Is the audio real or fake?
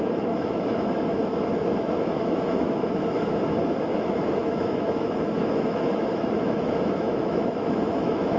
fake